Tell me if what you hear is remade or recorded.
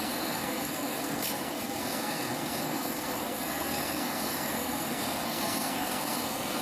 remade